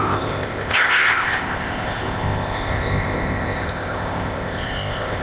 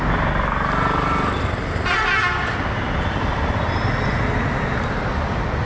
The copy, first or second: first